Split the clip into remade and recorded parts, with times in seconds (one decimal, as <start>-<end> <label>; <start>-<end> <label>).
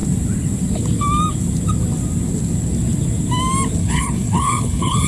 0.0-3.8 recorded; 3.8-5.1 remade